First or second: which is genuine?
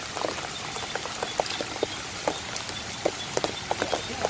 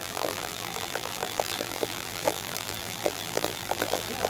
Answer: first